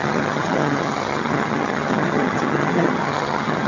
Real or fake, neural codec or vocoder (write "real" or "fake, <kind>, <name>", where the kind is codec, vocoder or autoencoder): fake, vocoder, HiFi-GAN